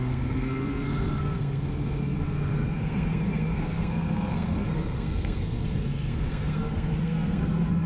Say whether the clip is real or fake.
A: fake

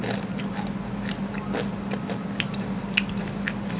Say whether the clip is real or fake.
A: real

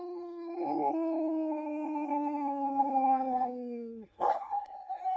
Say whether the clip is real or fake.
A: fake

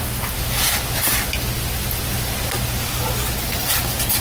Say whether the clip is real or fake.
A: real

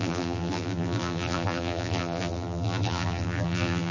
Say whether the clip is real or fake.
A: fake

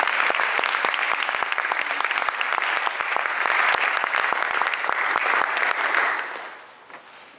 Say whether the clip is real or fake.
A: real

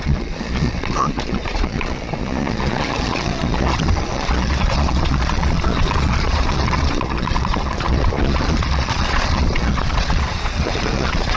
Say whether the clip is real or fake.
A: fake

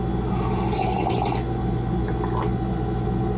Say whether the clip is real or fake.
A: real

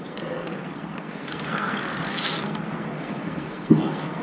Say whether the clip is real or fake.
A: fake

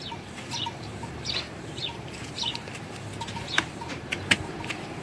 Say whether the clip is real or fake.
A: fake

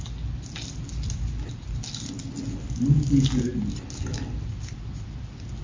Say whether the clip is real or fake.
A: real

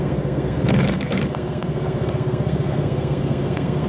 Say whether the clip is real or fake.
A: fake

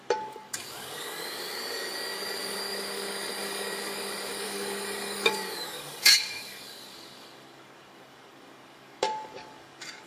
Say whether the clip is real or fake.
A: fake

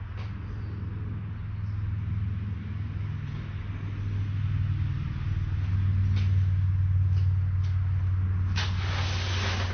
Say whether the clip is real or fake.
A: real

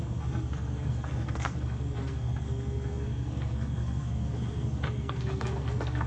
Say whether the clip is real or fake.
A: fake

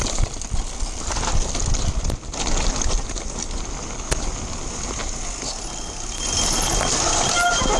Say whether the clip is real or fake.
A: real